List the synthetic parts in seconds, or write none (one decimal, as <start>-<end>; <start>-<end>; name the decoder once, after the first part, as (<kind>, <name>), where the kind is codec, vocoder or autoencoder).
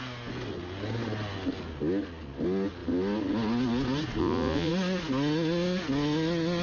4.2-4.7 (vocoder, Vocos)